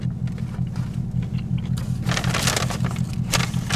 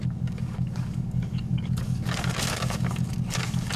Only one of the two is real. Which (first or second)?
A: first